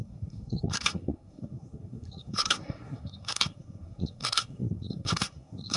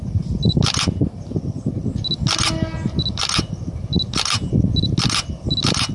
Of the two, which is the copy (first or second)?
first